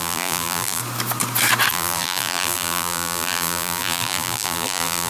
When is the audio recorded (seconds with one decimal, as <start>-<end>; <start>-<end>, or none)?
0.8-1.7